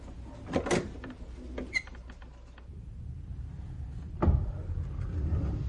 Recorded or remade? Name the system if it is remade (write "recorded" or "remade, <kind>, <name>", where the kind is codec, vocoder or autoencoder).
recorded